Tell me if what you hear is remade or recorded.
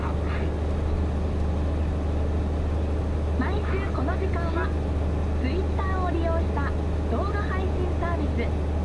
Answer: recorded